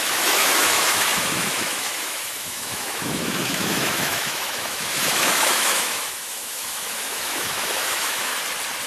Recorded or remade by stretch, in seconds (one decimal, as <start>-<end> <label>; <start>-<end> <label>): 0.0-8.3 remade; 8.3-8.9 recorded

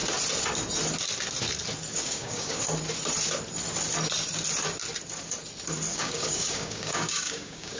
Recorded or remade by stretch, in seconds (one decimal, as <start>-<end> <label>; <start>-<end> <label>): 0.0-1.9 recorded; 1.9-2.6 remade; 2.6-5.9 recorded; 5.9-7.8 remade

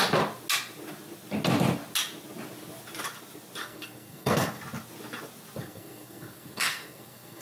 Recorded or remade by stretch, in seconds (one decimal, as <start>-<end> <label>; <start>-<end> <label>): 0.0-3.6 recorded; 3.6-4.6 remade; 4.6-5.6 recorded; 5.6-7.4 remade

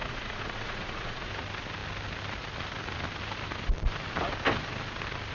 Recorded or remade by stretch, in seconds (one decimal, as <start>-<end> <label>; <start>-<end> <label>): 0.0-1.3 remade; 1.3-5.3 recorded

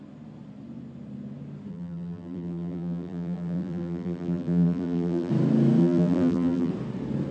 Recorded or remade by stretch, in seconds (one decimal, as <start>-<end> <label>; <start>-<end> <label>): 0.0-1.7 recorded; 1.7-5.3 remade; 5.3-5.8 recorded; 5.8-6.7 remade; 6.7-7.3 recorded

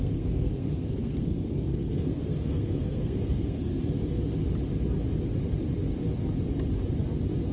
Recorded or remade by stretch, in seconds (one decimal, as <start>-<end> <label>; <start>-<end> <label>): 0.0-3.8 remade; 3.8-7.5 recorded

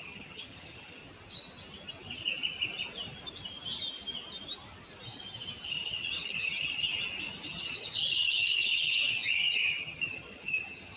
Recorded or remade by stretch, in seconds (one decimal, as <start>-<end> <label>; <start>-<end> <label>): 0.0-1.0 remade; 1.0-5.7 recorded; 5.7-6.9 remade; 6.9-7.5 recorded; 7.5-11.0 remade

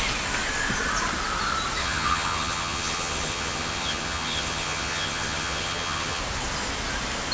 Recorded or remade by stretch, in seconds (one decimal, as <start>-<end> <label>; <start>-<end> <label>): 0.0-1.8 recorded; 1.8-6.2 remade; 6.2-7.3 recorded